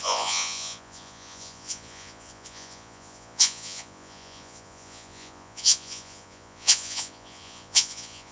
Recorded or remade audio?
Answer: remade